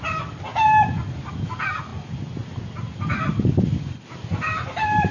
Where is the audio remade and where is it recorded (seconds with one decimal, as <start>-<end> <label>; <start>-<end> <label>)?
0.0-5.1 recorded